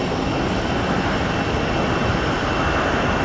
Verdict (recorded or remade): recorded